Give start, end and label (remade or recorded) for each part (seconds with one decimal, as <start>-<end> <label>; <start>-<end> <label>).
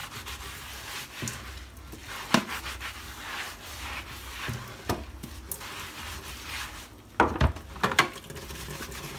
0.0-9.2 recorded